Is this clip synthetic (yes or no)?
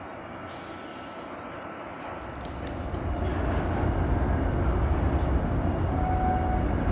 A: no